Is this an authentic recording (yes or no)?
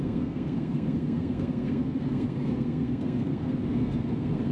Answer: no